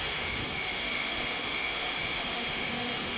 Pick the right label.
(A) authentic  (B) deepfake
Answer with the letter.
B